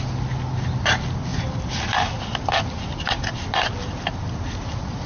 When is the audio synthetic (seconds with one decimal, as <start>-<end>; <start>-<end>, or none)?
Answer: none